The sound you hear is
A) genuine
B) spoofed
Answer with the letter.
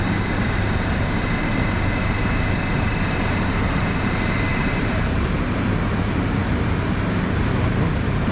B